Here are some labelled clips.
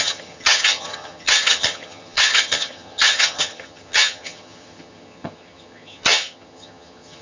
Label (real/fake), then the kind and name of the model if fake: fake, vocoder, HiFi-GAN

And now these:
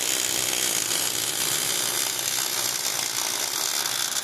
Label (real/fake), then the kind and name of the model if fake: real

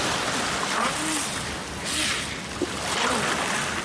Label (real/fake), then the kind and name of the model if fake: real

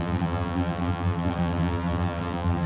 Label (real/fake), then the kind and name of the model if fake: fake, vocoder, BigVGAN v2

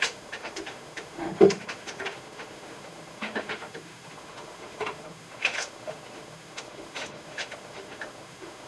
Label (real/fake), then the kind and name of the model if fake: fake, autoencoder, DAC-VAE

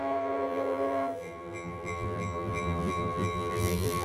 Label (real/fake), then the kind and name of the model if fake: fake, vocoder, BigVGAN v2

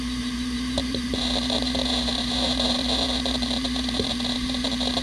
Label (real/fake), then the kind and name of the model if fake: fake, vocoder, BigVGAN v2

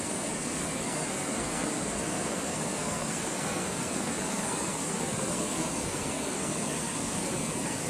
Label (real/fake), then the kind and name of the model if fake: fake, codec, SNAC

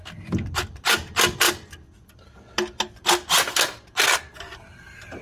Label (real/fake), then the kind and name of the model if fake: real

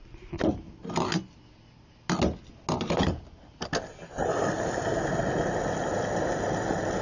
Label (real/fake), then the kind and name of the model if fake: real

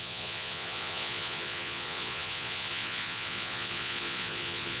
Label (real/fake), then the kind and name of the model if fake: fake, vocoder, Vocos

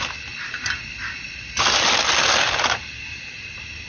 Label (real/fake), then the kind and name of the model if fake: real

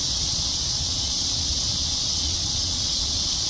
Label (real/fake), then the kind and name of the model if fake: fake, vocoder, Vocos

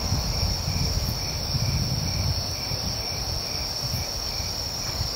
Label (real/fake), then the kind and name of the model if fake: real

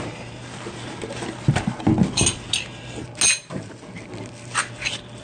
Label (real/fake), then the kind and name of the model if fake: real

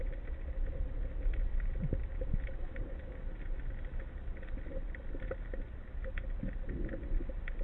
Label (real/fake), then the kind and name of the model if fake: real